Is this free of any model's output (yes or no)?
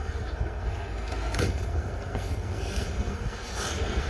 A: no